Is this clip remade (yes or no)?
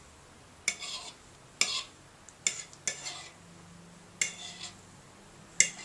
no